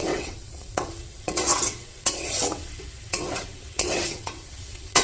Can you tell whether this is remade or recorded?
remade